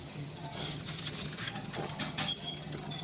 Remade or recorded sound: remade